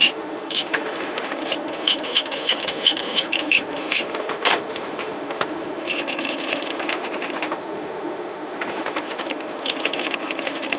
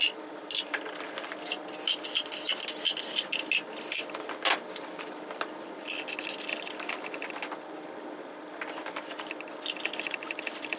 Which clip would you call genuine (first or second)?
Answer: second